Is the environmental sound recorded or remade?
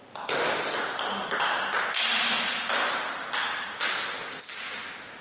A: recorded